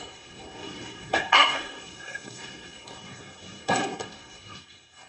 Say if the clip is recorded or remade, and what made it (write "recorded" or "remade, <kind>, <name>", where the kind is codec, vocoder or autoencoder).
remade, codec, SNAC